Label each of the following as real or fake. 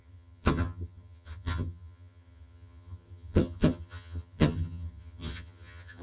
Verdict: fake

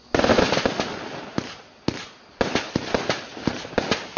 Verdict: real